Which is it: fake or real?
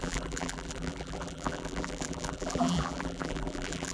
fake